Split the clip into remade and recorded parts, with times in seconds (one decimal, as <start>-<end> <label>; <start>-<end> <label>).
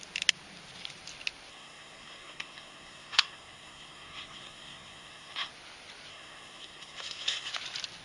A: 0.0-1.5 recorded; 1.5-5.5 remade; 5.5-6.1 recorded; 6.1-7.5 remade; 7.5-8.0 recorded